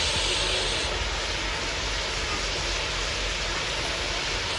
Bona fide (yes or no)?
yes